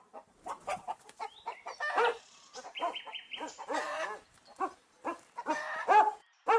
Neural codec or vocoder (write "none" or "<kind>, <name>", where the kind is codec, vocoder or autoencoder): vocoder, BigVGAN v2